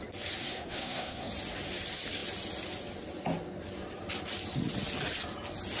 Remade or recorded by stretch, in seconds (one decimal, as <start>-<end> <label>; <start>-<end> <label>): 0.0-0.4 recorded; 0.4-1.3 remade; 1.3-5.8 recorded